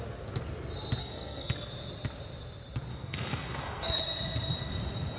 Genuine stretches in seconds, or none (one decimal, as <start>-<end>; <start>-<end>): 0.0-1.0; 1.7-2.9; 4.0-5.2

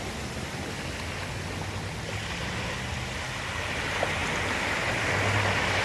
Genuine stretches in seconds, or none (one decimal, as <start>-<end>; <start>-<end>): 0.0-5.8

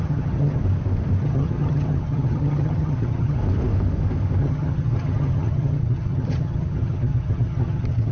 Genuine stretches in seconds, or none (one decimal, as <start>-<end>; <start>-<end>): 0.6-1.2; 3.4-4.4